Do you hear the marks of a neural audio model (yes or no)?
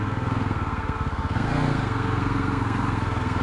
yes